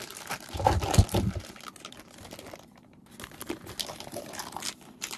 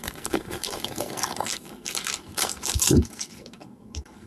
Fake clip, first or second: second